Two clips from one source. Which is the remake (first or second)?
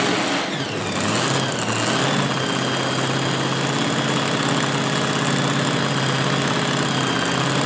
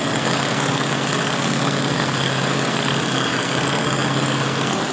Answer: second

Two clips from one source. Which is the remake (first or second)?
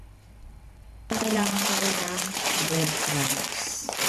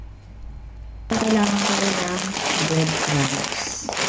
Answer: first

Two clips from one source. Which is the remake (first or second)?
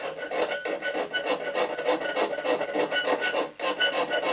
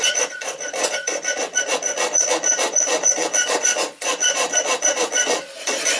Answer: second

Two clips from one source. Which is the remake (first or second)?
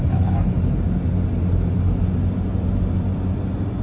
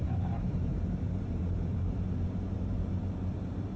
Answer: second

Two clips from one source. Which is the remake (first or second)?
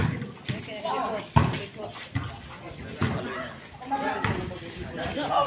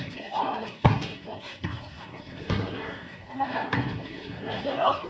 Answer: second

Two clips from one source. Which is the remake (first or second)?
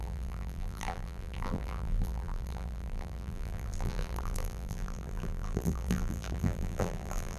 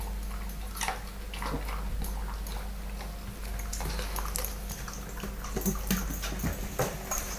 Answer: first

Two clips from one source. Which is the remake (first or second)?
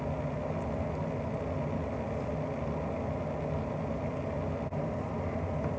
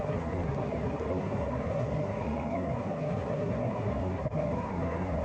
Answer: second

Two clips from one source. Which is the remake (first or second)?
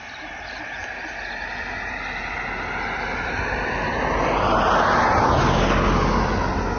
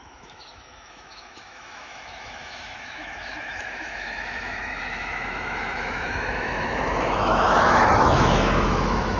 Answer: second